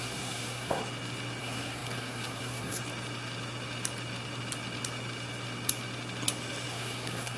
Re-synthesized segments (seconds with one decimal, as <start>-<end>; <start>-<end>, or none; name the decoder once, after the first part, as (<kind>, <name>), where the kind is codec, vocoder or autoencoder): 0.0-0.8 (codec, SNAC); 1.4-2.8; 6.7-7.4